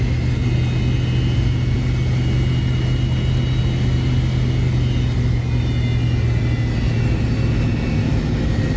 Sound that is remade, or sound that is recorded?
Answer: recorded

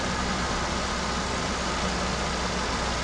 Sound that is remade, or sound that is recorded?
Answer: recorded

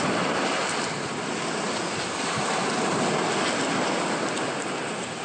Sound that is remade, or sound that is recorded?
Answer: recorded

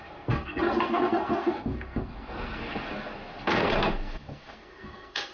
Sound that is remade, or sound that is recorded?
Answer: remade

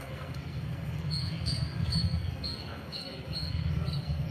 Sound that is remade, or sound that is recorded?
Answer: remade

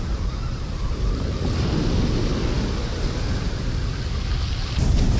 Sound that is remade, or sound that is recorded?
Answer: recorded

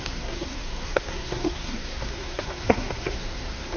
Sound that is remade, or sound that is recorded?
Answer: remade